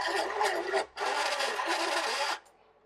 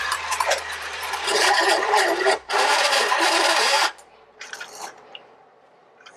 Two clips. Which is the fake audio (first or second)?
second